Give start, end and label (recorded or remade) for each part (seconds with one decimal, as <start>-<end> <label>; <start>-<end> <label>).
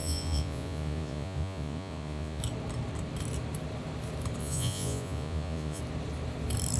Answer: 0.0-2.4 remade; 2.4-4.4 recorded; 4.4-5.8 remade; 5.8-6.8 recorded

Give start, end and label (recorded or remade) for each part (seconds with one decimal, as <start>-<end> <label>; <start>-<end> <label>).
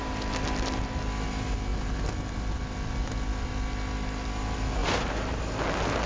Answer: 0.0-4.8 recorded; 4.8-5.4 remade; 5.4-6.1 recorded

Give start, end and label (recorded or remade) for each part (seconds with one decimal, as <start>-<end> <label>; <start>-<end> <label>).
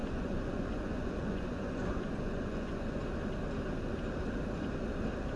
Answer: 0.0-3.0 remade; 3.0-5.4 recorded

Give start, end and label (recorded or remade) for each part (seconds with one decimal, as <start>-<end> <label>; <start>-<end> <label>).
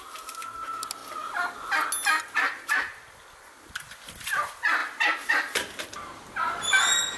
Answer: 0.0-7.2 recorded